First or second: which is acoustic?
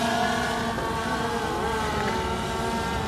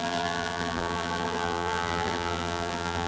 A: first